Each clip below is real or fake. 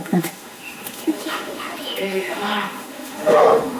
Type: fake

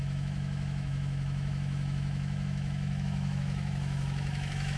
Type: fake